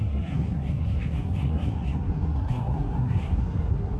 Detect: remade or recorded remade